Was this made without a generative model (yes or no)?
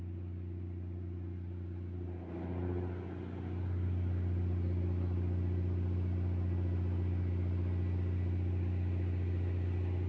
yes